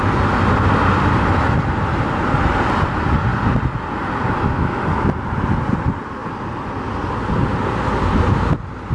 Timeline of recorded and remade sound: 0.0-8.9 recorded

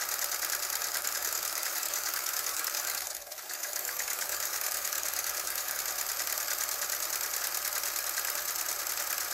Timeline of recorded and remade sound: 0.0-0.8 recorded; 0.8-5.8 remade; 5.8-9.3 recorded